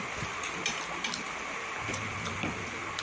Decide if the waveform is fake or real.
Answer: real